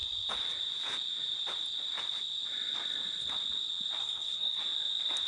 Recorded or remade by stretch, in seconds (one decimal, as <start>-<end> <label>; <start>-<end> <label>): 0.0-4.0 recorded; 4.0-4.6 remade; 4.6-5.3 recorded